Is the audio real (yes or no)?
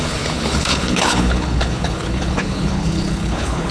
no